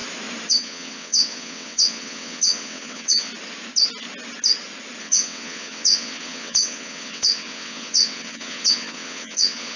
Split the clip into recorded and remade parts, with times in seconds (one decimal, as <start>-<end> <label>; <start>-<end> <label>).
0.0-0.5 recorded; 0.5-3.3 remade; 3.3-5.0 recorded; 5.0-9.8 remade